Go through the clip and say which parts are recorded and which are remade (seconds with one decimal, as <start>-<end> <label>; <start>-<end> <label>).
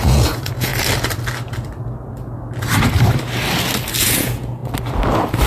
0.0-0.7 remade; 0.7-4.0 recorded; 4.0-4.6 remade; 4.6-5.5 recorded